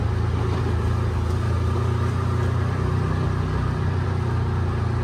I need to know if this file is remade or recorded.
recorded